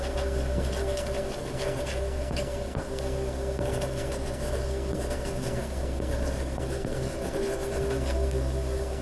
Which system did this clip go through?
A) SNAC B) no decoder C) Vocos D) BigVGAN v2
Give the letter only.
A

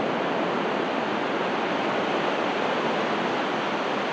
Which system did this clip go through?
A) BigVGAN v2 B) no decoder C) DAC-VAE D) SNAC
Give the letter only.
B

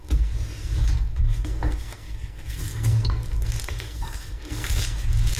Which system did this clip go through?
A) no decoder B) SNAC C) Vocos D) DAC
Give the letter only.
B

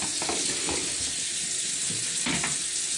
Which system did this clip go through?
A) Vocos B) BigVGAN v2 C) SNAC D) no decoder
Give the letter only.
D